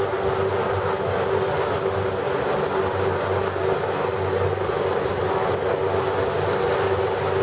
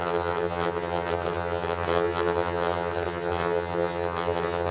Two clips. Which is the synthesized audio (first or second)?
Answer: second